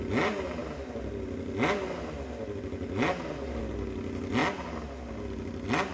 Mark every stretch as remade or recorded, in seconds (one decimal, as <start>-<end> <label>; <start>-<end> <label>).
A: 0.0-5.9 recorded